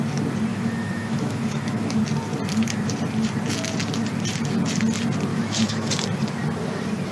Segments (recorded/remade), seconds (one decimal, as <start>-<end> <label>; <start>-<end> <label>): 0.0-0.5 recorded; 0.5-2.0 remade; 2.0-5.3 recorded; 5.3-5.9 remade; 5.9-7.1 recorded